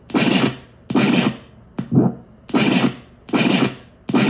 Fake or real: real